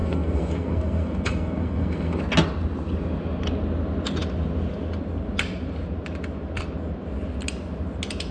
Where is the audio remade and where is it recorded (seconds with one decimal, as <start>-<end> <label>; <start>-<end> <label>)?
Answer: 0.0-2.2 remade; 2.2-8.3 recorded